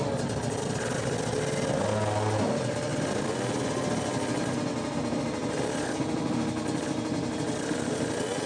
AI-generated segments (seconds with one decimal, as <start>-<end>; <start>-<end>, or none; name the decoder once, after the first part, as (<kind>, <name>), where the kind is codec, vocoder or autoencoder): none